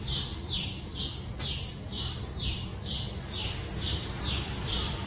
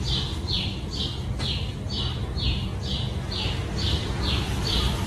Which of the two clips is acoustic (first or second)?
second